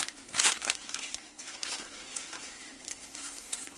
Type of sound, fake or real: fake